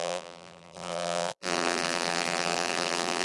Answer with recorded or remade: remade